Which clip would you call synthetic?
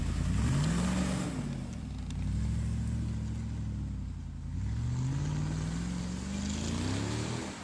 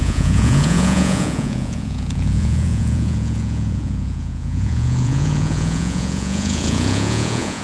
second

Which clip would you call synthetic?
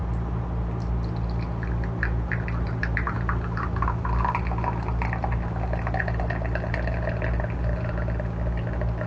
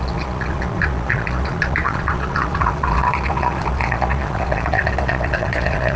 second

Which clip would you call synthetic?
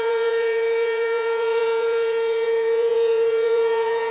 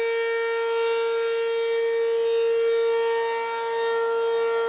first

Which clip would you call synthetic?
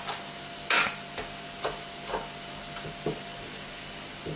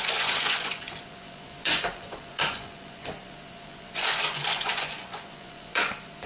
second